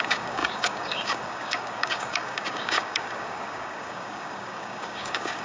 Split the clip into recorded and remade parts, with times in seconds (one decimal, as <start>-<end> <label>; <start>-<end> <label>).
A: 0.0-5.4 remade